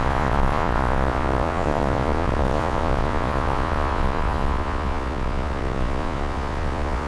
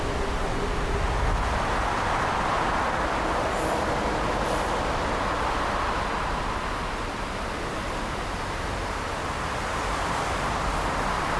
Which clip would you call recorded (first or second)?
second